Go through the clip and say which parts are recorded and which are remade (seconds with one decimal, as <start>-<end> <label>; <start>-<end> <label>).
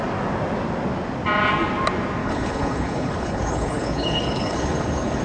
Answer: 0.0-2.2 recorded; 2.2-5.2 remade